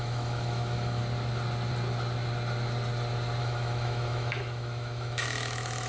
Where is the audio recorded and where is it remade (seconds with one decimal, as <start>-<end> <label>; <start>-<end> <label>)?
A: 0.0-1.0 remade; 1.0-3.4 recorded; 3.4-5.9 remade